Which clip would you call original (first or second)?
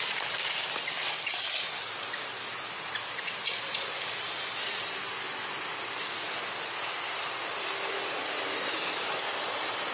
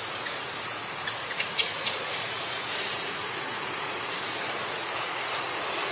first